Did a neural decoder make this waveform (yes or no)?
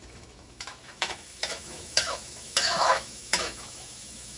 yes